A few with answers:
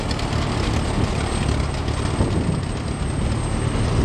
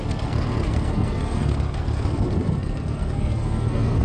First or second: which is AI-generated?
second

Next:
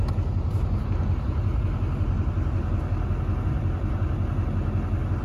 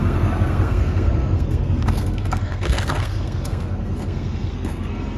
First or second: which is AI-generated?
second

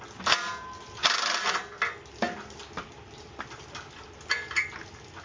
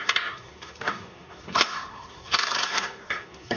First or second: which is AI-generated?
second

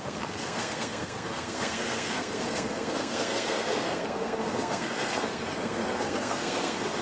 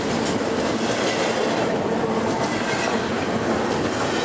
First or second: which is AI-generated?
first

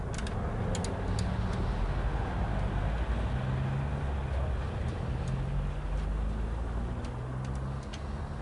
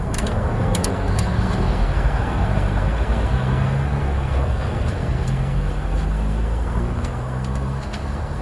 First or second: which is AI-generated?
second